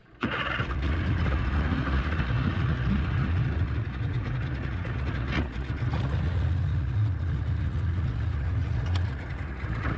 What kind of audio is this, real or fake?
fake